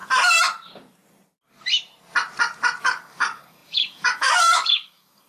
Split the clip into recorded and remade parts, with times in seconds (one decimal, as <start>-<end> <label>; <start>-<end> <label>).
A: 0.0-2.8 recorded; 2.8-5.3 remade